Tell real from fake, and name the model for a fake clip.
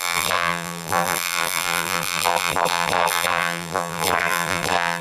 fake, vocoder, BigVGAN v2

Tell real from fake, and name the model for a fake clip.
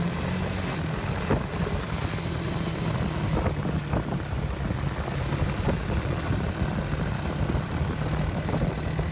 real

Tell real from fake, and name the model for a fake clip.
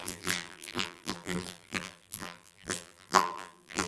fake, vocoder, BigVGAN v2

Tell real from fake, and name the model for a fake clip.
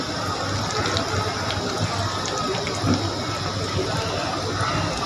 real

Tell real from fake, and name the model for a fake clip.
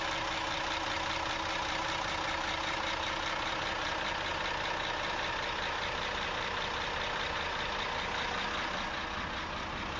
real